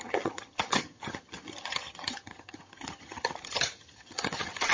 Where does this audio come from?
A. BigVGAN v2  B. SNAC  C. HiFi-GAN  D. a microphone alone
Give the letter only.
C